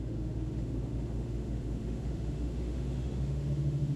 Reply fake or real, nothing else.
fake